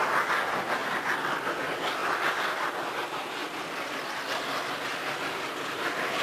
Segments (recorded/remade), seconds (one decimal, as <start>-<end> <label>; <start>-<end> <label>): 0.0-0.8 recorded; 0.8-1.5 remade; 1.5-2.0 recorded; 2.0-2.7 remade; 2.7-3.4 recorded; 3.4-4.2 remade; 4.2-6.2 recorded